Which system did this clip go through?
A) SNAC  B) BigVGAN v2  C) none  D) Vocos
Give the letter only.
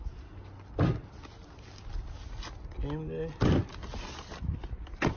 C